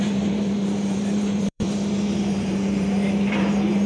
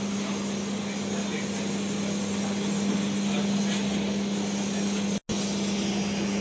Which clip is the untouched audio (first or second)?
second